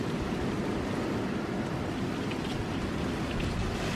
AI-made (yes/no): no